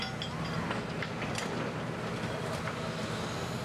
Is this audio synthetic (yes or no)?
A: no